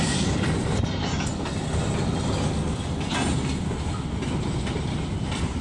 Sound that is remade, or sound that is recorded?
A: recorded